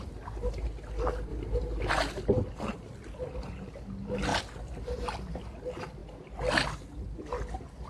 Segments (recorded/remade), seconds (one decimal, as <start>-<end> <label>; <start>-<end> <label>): 0.0-7.9 recorded

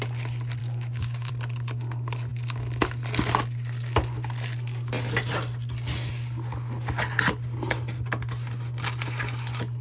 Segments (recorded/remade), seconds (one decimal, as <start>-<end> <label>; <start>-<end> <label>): 0.0-0.6 recorded; 0.6-1.3 remade; 1.3-9.8 recorded

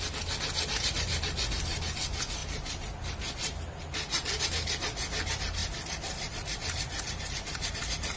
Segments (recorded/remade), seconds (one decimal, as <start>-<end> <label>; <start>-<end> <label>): 0.0-8.2 recorded

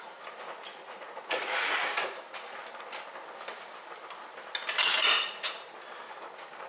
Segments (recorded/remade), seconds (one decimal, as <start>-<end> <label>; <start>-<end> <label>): 0.0-0.7 recorded; 0.7-2.2 remade; 2.2-5.0 recorded; 5.0-5.5 remade; 5.5-6.7 recorded

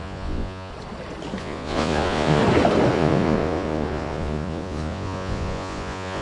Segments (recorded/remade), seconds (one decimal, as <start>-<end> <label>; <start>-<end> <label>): 0.0-0.7 remade; 0.7-1.4 recorded; 1.4-2.4 remade; 2.4-2.9 recorded; 2.9-6.2 remade

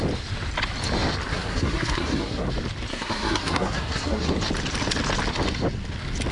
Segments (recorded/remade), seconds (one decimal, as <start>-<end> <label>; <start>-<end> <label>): 0.0-1.3 recorded; 1.3-2.5 remade; 2.5-2.9 recorded; 2.9-4.3 remade; 4.3-6.3 recorded